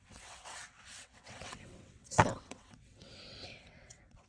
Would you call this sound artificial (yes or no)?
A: yes